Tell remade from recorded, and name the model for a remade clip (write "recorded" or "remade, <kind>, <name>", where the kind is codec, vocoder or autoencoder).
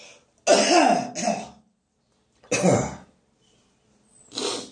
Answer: recorded